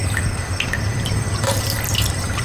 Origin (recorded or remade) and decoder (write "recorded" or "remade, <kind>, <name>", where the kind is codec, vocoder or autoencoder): recorded